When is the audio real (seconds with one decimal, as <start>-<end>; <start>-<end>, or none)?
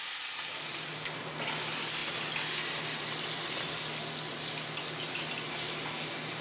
0.0-6.4